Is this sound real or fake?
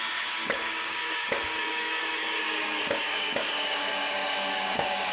fake